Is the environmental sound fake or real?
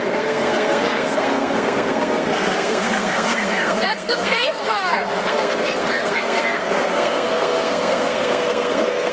fake